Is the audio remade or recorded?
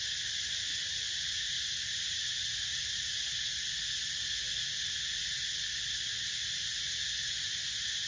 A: recorded